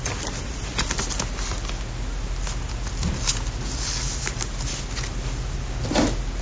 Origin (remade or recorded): recorded